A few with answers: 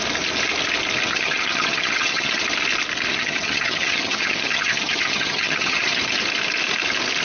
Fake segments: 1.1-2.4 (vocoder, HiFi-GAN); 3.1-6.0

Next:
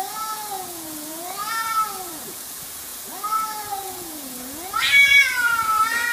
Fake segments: 0.0-6.1 (vocoder, Vocos)

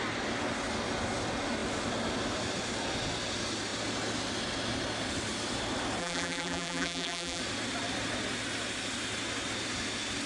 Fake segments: 6.0-7.4 (vocoder, BigVGAN v2)

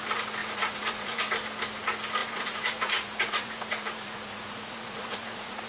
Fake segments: 0.4-1.2 (vocoder, Vocos); 2.2-5.7